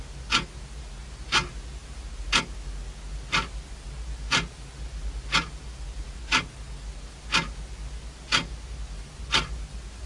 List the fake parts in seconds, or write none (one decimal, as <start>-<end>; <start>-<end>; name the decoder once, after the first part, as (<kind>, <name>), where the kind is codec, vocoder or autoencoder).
none